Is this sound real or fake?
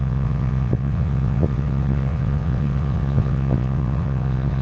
fake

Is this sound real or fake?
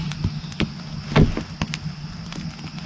real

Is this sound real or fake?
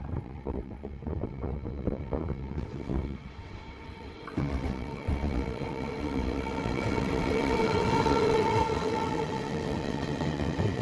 fake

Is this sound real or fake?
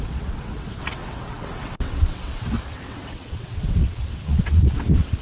fake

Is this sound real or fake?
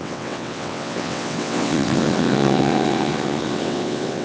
fake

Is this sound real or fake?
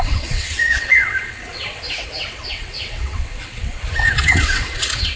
fake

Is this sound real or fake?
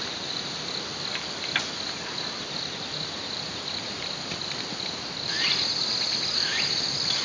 real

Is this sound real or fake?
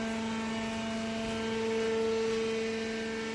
real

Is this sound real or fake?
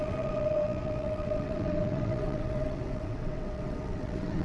fake